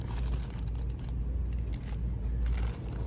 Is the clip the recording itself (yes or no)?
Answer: yes